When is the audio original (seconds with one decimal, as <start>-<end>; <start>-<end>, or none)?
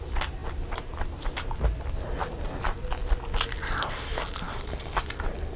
0.0-5.6